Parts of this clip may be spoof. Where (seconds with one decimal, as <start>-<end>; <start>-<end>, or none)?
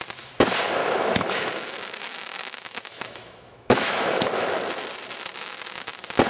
0.8-4.6